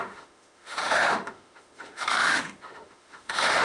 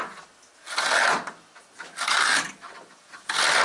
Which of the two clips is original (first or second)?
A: second